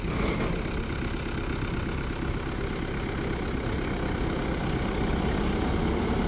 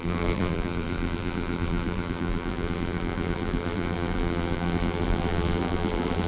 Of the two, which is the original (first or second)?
first